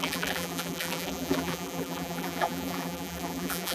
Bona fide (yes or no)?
no